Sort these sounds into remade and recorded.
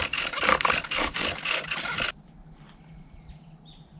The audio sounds recorded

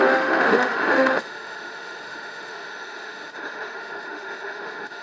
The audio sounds remade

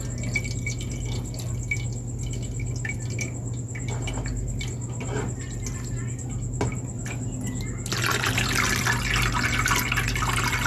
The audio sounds recorded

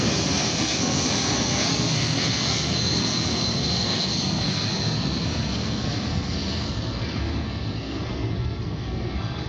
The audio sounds remade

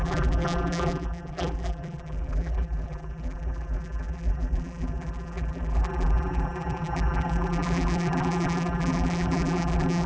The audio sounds remade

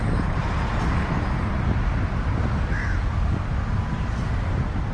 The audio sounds recorded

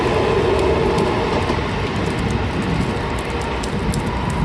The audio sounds recorded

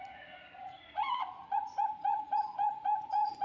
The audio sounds remade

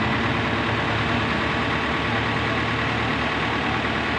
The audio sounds recorded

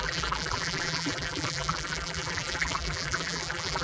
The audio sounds remade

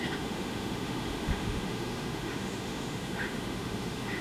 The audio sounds remade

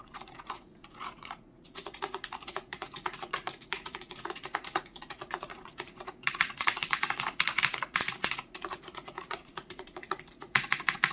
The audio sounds remade